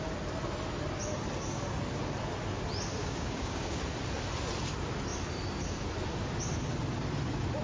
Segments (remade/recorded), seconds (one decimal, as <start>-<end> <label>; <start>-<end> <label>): 0.0-3.0 recorded; 3.0-3.8 remade; 3.8-7.6 recorded